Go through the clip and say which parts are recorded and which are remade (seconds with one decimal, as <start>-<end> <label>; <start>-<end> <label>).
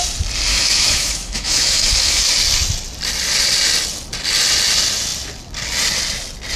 0.0-0.5 recorded; 0.5-2.3 remade; 2.3-6.6 recorded